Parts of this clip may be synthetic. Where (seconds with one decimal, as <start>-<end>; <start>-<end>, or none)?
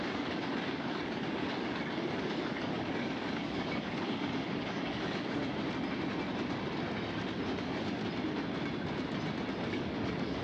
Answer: 0.0-5.4; 7.6-8.0; 9.7-10.4